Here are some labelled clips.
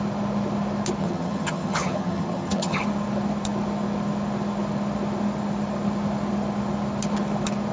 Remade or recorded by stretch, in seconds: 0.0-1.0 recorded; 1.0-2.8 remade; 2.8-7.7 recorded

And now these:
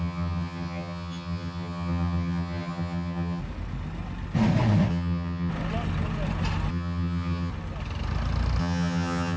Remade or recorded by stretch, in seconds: 0.0-3.4 remade; 3.4-4.9 recorded; 4.9-5.5 remade; 5.5-6.7 recorded; 6.7-7.5 remade; 7.5-8.6 recorded; 8.6-9.4 remade